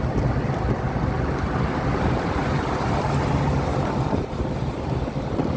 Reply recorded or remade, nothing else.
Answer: recorded